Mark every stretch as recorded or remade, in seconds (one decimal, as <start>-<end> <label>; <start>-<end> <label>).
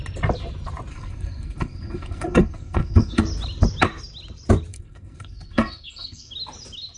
0.0-0.9 recorded; 0.9-3.2 remade; 3.2-4.7 recorded; 4.7-6.3 remade; 6.3-7.0 recorded